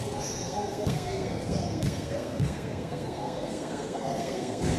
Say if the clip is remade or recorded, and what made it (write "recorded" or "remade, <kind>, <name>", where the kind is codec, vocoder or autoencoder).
remade, codec, SNAC